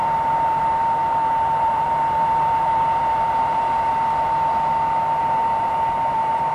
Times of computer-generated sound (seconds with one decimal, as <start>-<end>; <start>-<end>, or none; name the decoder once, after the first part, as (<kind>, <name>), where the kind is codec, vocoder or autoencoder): 0.0-3.9 (vocoder, BigVGAN v2); 5.2-6.5